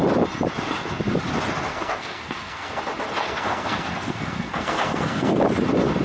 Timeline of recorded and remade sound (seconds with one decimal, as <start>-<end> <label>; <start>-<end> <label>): 0.0-1.7 recorded; 1.7-2.8 remade; 2.8-3.2 recorded; 3.2-5.4 remade; 5.4-6.0 recorded

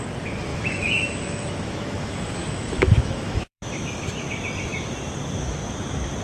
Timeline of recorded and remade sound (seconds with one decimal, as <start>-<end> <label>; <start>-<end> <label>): 0.0-0.5 recorded; 0.5-4.2 remade; 4.2-6.2 recorded

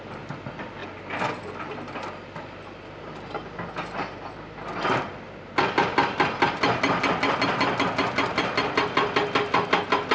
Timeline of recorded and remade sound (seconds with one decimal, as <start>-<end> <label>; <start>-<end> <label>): 0.0-10.1 recorded

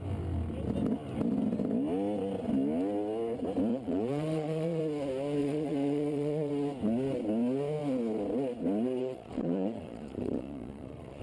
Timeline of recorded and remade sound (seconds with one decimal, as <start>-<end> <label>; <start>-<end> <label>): 0.0-3.7 recorded; 3.7-4.8 remade; 4.8-5.4 recorded; 5.4-6.5 remade; 6.5-9.0 recorded; 9.0-11.2 remade

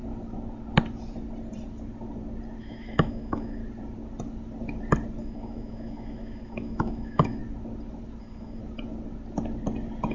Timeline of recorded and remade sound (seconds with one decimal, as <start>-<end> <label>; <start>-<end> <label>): 0.0-2.6 recorded; 2.6-3.6 remade; 3.6-5.2 recorded; 5.2-7.4 remade; 7.4-8.2 recorded; 8.2-8.6 remade; 8.6-10.1 recorded